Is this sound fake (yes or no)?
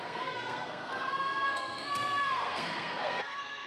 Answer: yes